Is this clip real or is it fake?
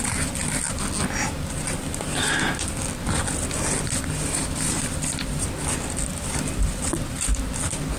real